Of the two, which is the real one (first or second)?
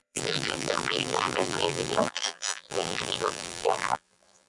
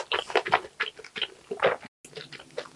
second